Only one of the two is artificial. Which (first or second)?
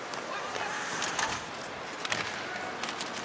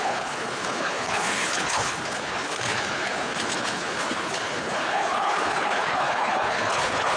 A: second